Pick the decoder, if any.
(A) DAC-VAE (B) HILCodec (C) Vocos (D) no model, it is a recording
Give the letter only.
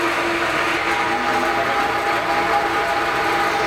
D